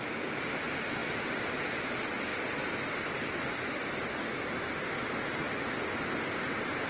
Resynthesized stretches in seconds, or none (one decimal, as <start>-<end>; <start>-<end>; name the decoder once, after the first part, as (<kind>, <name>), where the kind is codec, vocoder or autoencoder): 1.0-1.8 (vocoder, BigVGAN v2)